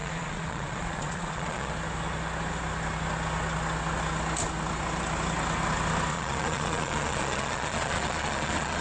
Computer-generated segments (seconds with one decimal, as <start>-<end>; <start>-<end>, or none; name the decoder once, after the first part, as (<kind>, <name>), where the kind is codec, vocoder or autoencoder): 0.0-1.7 (vocoder, Vocos); 6.1-8.8